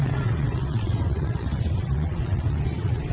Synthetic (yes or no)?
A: yes